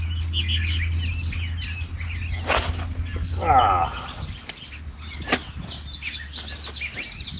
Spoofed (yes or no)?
no